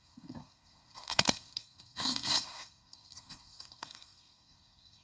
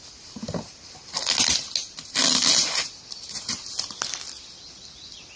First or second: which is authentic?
second